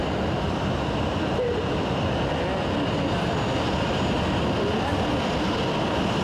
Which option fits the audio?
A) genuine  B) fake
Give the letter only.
A